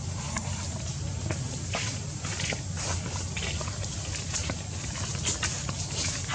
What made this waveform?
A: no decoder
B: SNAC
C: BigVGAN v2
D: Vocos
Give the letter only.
A